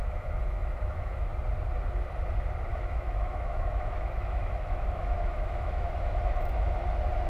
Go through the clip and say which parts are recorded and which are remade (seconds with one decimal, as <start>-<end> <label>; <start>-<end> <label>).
0.0-1.3 remade; 1.3-2.7 recorded; 2.7-6.8 remade; 6.8-7.3 recorded